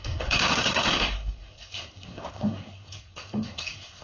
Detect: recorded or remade remade